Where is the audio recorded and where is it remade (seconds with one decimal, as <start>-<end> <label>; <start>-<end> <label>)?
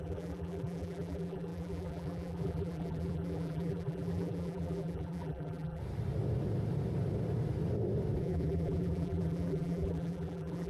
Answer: 0.0-5.8 remade; 5.8-8.2 recorded; 8.2-10.7 remade